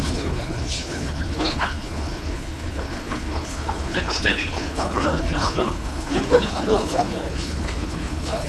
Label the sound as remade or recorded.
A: remade